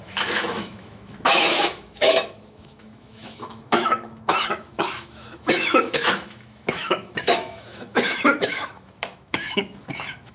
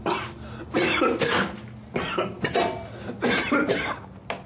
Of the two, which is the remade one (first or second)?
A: first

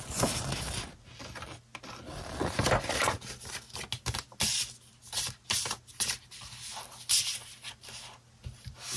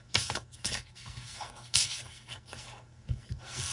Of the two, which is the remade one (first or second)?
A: second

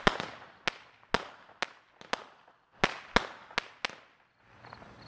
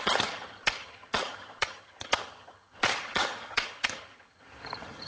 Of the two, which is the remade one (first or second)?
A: second